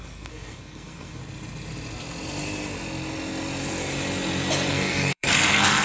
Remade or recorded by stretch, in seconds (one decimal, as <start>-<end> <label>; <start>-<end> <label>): 0.0-1.2 remade; 1.2-4.7 recorded; 4.7-5.8 remade